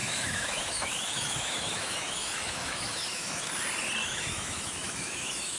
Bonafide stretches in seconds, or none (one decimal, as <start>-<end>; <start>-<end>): 3.4-4.0